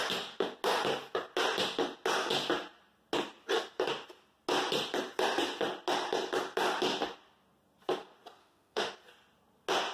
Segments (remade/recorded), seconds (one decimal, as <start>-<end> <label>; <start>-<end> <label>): 0.0-8.4 recorded; 8.4-8.9 remade; 8.9-9.9 recorded